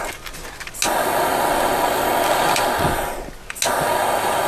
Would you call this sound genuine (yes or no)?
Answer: yes